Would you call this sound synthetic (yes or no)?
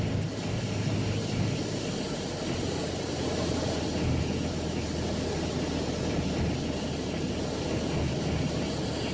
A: no